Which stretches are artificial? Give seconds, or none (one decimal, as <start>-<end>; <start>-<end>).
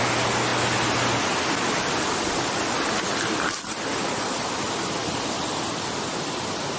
none